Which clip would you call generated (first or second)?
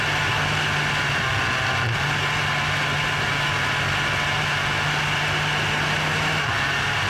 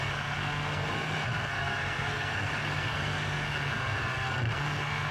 second